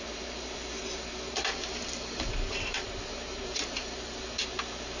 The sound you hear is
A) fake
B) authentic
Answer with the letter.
A